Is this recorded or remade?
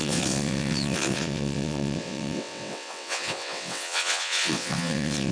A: remade